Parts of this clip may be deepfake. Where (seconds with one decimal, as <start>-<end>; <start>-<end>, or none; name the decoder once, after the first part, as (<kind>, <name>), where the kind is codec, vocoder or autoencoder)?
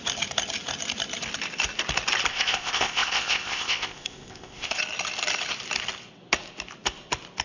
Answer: 2.3-4.8 (codec, ZipCodec)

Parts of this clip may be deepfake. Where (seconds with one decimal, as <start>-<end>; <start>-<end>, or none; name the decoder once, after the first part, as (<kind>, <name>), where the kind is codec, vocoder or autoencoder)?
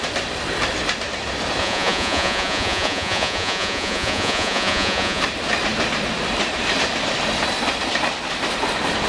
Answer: 1.6-5.2 (vocoder, Vocos)